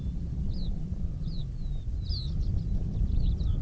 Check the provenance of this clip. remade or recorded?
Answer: recorded